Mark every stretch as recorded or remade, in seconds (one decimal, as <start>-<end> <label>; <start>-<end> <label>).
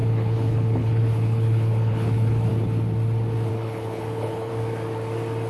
0.0-2.5 remade; 2.5-3.5 recorded; 3.5-4.5 remade; 4.5-5.5 recorded